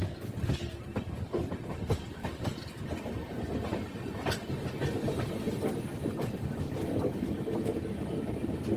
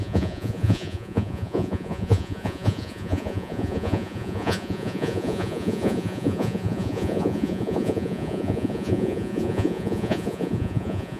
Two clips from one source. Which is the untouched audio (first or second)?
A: first